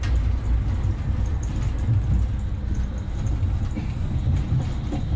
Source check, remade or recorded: recorded